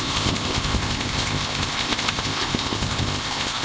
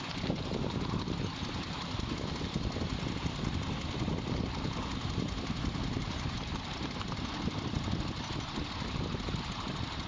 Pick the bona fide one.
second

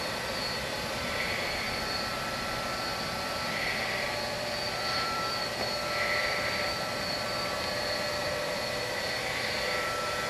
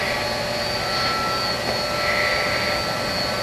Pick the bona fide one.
second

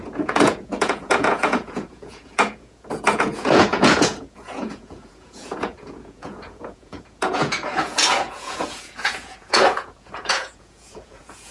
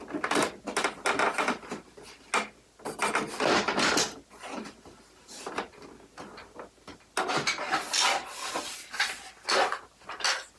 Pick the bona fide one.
second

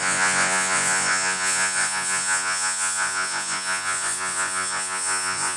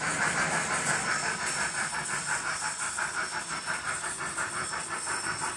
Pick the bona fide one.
second